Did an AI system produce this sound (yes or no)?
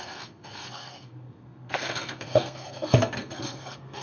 yes